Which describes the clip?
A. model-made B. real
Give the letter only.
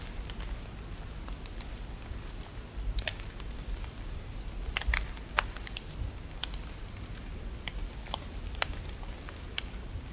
B